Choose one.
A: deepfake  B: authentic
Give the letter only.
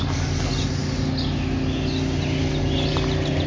B